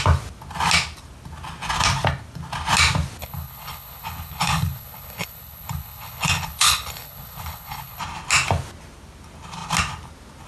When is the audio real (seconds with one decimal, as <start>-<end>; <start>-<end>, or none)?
0.0-3.2; 8.0-10.5